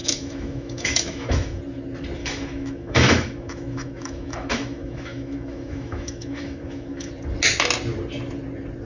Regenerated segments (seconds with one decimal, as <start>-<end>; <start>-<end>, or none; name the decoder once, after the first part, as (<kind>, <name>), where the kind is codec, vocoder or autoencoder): 0.0-1.6 (autoencoder, DAC-VAE); 2.2-7.1